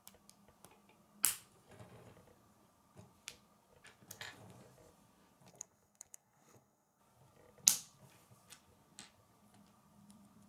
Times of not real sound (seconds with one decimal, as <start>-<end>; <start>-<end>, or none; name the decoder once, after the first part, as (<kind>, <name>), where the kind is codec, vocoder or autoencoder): 5.5-7.0 (codec, SNAC)